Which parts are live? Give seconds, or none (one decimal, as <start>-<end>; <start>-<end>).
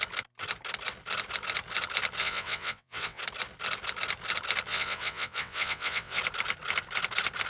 0.0-2.2; 3.2-4.7; 6.2-7.5